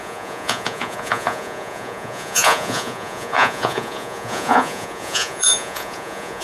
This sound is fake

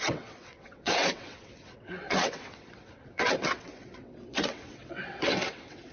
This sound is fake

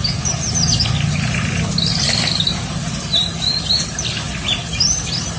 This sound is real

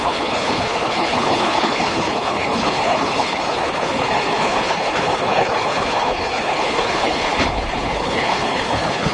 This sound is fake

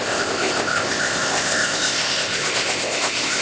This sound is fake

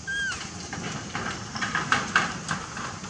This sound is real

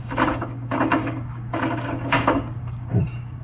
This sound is fake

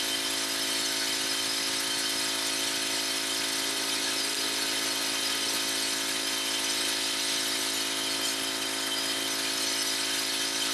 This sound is real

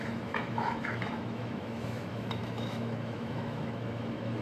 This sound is fake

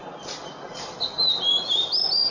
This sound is real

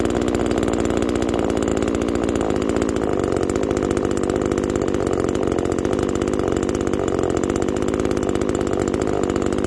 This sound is real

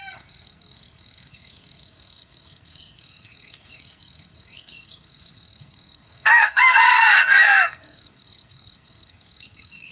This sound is fake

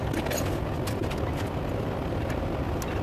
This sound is real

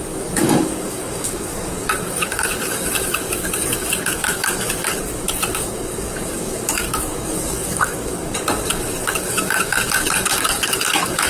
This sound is fake